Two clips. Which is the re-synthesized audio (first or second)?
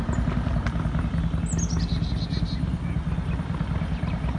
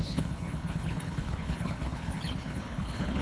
second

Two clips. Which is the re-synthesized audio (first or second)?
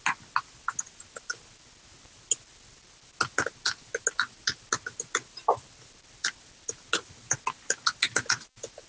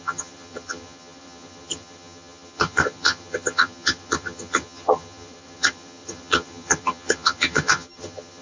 second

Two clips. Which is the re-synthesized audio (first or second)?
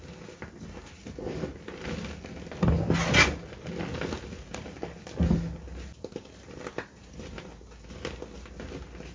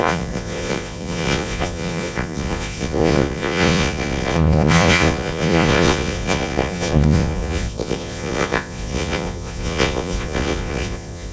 second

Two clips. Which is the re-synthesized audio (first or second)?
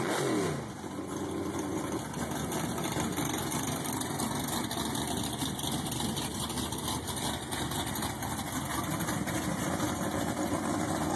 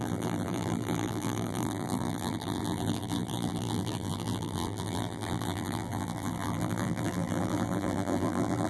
second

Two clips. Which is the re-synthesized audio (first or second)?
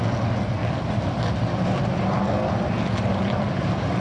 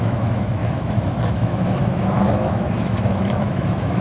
second